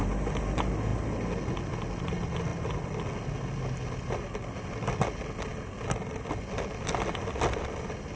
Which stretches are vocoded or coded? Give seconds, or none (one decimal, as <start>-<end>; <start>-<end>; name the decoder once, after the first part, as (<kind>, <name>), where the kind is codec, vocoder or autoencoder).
none